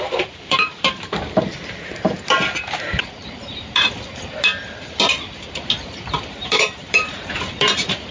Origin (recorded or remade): remade